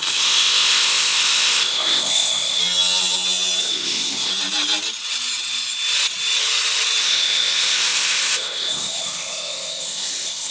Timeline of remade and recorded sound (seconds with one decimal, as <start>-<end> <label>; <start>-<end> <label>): 0.0-2.6 remade; 2.6-3.6 recorded; 3.6-4.3 remade; 4.3-7.0 recorded; 7.0-10.5 remade